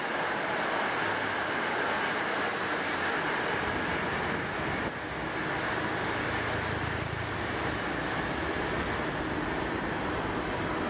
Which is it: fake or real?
real